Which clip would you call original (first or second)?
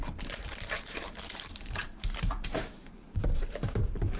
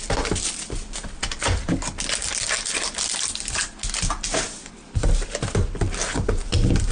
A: second